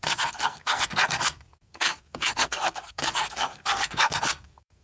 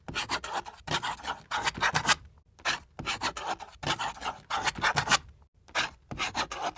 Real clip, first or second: second